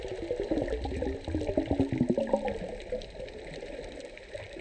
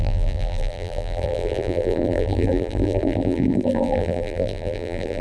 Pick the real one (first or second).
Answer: first